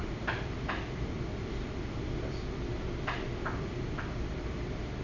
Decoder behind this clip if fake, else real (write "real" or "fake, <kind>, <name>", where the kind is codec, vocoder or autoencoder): real